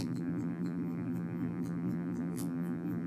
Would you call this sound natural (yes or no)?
no